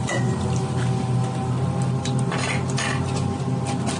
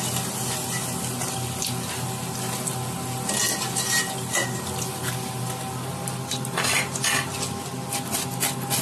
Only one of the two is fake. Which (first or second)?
first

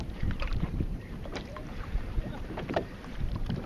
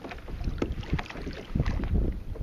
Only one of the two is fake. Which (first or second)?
first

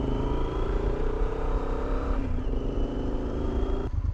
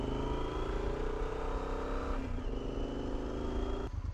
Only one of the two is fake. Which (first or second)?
first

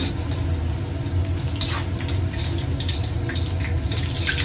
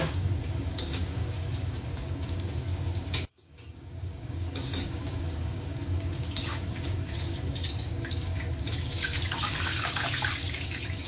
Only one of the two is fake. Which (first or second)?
second